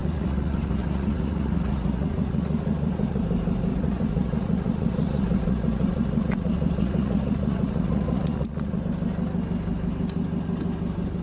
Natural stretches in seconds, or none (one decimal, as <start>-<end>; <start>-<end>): 3.2-3.7; 8.8-11.2